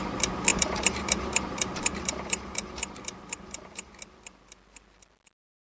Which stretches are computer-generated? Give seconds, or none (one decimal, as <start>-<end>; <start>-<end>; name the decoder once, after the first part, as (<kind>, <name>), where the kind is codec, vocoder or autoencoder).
0.5-3.9 (vocoder, BigVGAN v2)